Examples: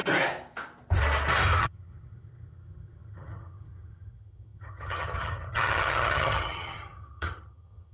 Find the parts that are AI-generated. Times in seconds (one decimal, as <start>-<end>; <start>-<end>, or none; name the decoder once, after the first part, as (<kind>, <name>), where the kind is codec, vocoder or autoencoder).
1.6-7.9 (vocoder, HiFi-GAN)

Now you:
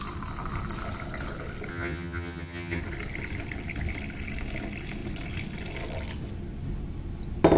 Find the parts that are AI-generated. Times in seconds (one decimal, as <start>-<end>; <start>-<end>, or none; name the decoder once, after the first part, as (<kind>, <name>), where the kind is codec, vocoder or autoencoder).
1.7-2.8 (vocoder, HiFi-GAN)

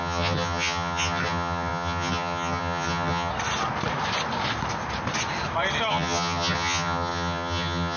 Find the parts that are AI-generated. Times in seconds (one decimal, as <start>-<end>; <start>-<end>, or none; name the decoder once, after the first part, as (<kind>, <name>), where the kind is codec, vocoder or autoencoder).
0.0-3.3 (vocoder, HiFi-GAN); 5.9-8.0

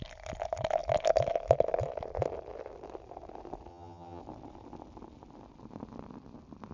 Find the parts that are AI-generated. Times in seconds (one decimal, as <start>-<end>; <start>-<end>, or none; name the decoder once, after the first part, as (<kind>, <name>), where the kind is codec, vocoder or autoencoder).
3.7-4.2 (vocoder, HiFi-GAN)